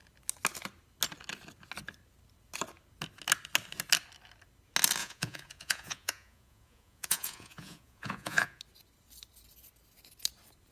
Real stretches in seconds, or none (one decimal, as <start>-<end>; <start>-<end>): 0.0-5.0; 8.6-10.7